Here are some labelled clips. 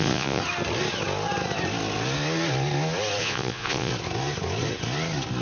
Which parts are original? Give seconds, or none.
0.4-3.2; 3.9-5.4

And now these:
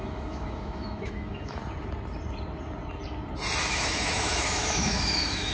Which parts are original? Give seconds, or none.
1.6-3.7

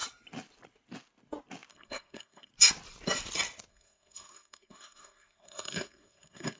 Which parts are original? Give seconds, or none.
0.0-1.7; 2.5-3.7